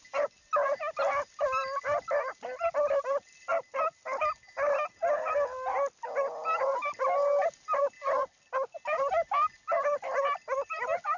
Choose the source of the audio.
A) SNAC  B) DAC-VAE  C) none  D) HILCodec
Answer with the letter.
C